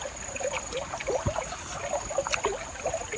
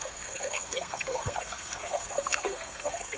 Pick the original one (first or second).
first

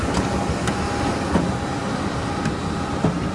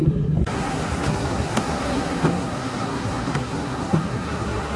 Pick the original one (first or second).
first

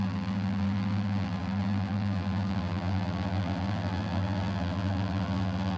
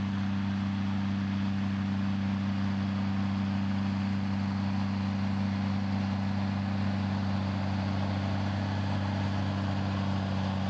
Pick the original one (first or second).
second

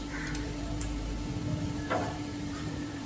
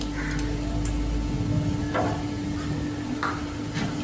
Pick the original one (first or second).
second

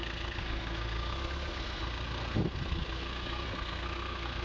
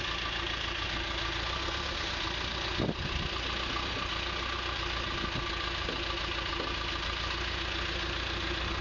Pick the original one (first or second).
second